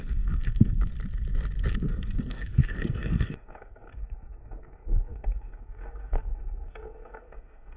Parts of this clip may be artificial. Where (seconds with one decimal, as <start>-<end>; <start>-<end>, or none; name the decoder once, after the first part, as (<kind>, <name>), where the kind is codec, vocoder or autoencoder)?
0.0-0.9 (codec, SNAC); 1.7-7.8